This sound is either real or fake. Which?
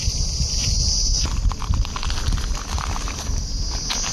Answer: real